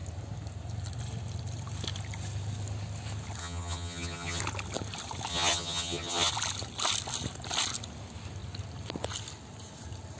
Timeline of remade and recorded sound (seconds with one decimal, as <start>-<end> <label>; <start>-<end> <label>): 0.0-3.4 recorded; 3.4-4.4 remade; 4.4-5.3 recorded; 5.3-6.3 remade; 6.3-10.2 recorded